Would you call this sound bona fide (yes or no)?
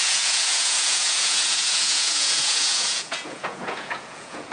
no